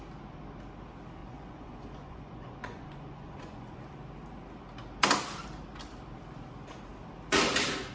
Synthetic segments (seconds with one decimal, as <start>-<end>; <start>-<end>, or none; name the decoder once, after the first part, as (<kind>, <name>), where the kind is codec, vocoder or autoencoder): 1.2-3.8 (vocoder, Vocos)